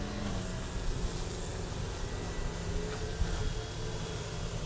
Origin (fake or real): real